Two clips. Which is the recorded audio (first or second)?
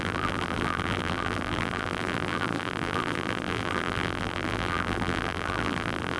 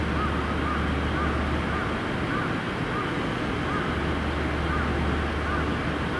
second